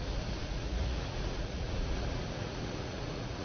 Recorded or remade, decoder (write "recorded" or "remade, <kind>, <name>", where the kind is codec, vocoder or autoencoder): remade, vocoder, Vocos